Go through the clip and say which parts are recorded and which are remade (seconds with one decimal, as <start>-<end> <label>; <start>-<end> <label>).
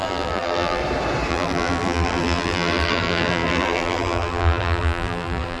0.0-0.8 remade; 0.8-1.3 recorded; 1.3-5.6 remade